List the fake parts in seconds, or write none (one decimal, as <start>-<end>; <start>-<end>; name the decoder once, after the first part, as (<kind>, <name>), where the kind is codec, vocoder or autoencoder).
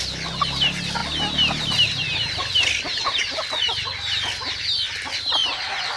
none